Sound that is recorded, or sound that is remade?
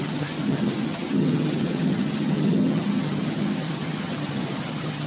remade